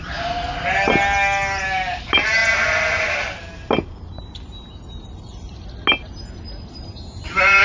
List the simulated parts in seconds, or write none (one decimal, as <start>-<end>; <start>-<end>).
none